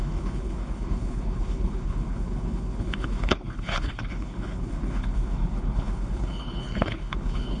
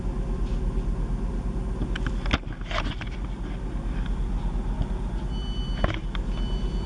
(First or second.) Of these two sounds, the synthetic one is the first